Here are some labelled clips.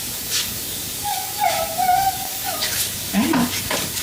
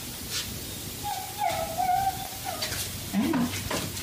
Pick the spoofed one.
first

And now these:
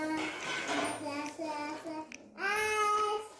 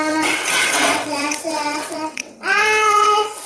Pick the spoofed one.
second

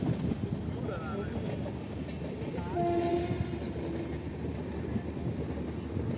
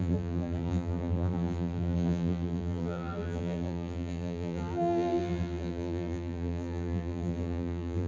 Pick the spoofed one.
second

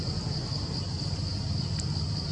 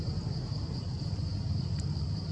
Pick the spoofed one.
second